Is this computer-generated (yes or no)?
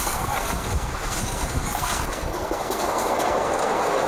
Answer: yes